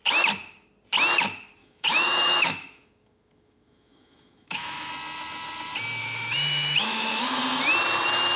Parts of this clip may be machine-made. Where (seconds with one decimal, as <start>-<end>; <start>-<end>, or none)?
1.6-4.9; 6.0-7.4